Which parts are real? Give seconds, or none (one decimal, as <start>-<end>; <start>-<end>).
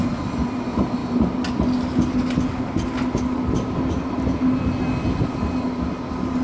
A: 0.0-6.4